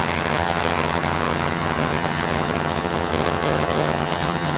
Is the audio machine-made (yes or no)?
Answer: yes